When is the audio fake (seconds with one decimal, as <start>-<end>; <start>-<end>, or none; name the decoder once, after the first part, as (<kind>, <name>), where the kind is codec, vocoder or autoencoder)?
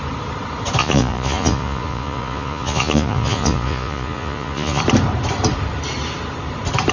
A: 0.8-4.8 (vocoder, Vocos)